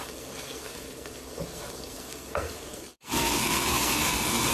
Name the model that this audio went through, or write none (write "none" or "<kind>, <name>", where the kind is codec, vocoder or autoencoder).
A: codec, SNAC